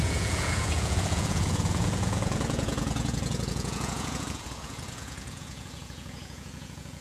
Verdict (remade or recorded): remade